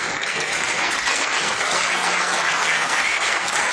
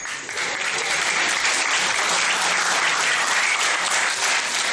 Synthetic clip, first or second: first